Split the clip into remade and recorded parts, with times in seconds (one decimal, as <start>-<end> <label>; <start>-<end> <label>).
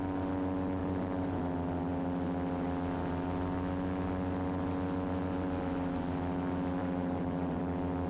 0.0-0.8 recorded; 0.8-1.4 remade; 1.4-6.8 recorded; 6.8-7.6 remade; 7.6-8.1 recorded